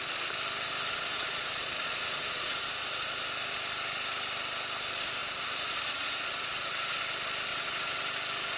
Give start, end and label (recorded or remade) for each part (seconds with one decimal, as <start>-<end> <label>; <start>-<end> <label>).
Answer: 0.0-0.9 recorded; 0.9-3.2 remade; 3.2-5.2 recorded; 5.2-7.0 remade; 7.0-7.5 recorded; 7.5-8.0 remade; 8.0-8.6 recorded